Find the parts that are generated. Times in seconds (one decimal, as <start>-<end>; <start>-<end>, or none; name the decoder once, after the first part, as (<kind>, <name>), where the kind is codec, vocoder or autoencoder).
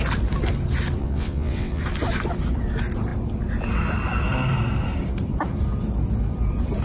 1.0-1.8 (vocoder, WaveNeXt)